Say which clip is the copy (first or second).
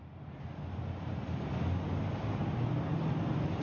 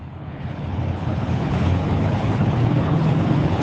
second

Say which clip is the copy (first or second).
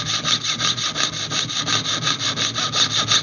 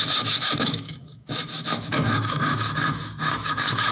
second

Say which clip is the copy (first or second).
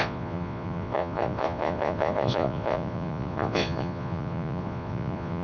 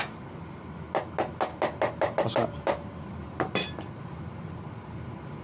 first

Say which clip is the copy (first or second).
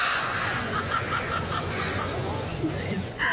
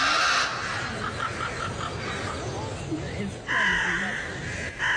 first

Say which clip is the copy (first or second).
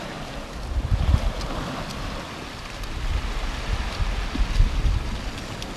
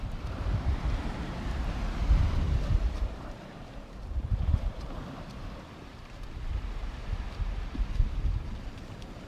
second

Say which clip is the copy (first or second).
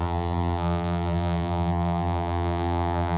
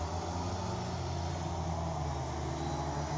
first